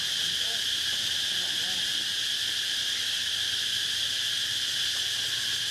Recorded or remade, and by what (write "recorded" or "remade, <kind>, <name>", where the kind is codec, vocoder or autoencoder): recorded